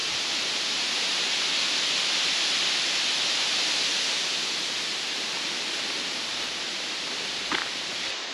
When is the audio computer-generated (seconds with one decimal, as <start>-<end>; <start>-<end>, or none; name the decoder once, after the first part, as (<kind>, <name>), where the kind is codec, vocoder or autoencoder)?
0.0-1.4 (vocoder, BigVGAN v2); 7.6-8.3

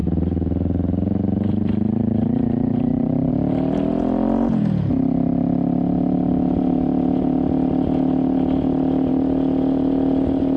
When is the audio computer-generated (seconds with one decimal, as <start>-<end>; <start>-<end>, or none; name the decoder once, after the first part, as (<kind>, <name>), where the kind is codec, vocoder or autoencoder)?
0.0-3.3 (vocoder, BigVGAN v2)

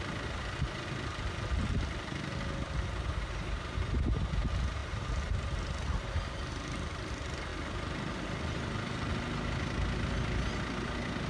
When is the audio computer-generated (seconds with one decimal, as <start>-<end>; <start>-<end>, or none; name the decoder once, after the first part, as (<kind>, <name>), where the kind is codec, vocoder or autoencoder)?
none

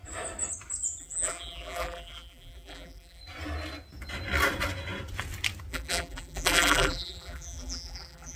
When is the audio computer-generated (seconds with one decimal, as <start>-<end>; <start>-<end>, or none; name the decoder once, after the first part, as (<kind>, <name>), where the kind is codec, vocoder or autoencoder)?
1.0-3.2 (vocoder, BigVGAN v2); 5.7-8.4

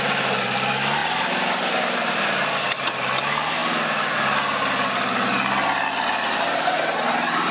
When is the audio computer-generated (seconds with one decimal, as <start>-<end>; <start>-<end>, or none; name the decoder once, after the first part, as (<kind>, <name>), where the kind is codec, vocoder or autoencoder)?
none

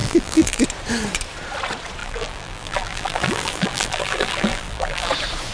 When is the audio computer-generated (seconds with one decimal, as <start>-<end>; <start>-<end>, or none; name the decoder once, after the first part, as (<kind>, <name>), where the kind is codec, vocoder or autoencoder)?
0.0-0.6 (vocoder, BigVGAN v2); 2.0-5.1